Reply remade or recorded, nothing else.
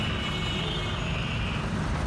recorded